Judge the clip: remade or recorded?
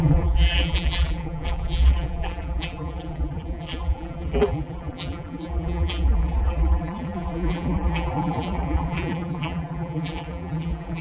remade